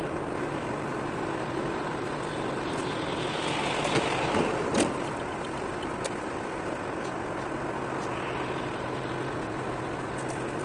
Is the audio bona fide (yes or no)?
yes